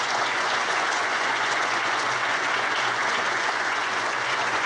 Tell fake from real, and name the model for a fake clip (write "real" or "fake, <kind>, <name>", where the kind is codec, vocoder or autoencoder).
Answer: fake, vocoder, Vocos